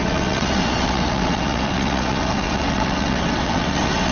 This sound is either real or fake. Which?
fake